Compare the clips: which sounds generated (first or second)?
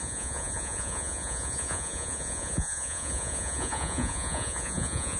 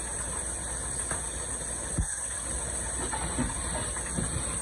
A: first